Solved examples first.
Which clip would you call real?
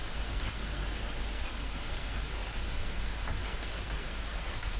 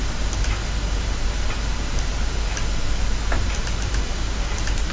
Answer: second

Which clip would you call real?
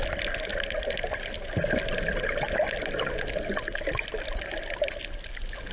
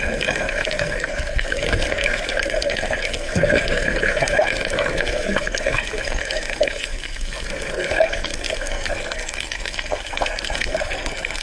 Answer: first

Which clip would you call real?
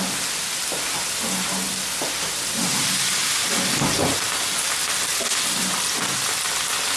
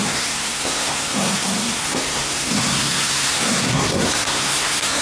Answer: first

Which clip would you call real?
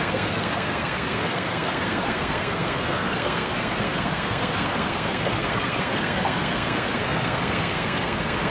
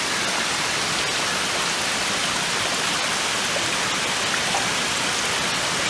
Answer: second